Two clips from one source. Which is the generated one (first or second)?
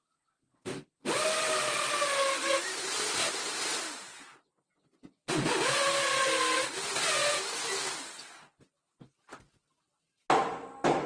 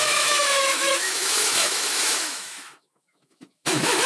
second